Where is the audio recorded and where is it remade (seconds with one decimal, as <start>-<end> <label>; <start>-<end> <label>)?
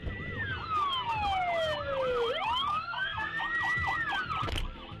0.0-2.7 recorded; 2.7-3.4 remade; 3.4-5.0 recorded